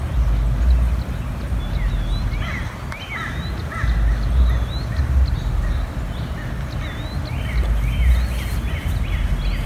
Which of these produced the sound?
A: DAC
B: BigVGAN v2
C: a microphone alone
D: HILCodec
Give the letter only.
C